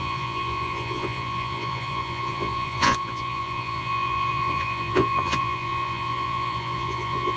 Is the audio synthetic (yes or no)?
yes